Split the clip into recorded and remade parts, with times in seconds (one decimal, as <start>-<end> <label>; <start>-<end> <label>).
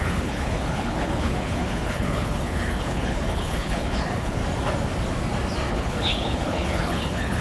0.0-4.4 remade; 4.4-5.7 recorded; 5.7-7.4 remade